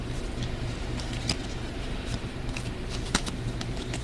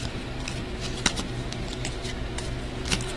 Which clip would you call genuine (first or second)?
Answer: second